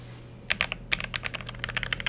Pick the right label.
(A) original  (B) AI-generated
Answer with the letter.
A